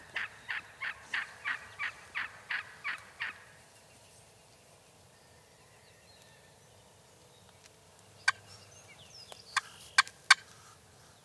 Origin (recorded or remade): recorded